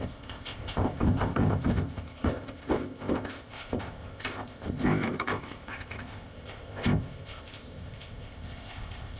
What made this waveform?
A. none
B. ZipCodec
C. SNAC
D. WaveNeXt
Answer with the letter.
B